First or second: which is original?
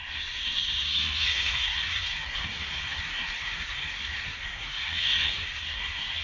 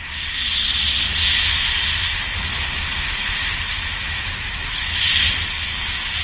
second